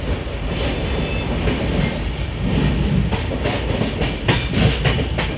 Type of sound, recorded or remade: recorded